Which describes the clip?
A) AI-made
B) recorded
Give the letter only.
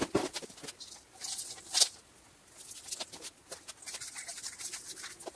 B